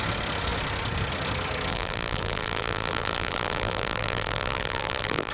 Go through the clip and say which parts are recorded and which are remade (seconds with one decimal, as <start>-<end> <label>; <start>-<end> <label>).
0.0-1.7 recorded; 1.7-5.3 remade